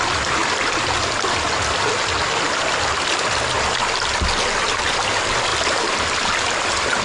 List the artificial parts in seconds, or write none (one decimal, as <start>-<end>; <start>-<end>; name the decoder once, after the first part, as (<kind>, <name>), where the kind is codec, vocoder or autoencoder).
none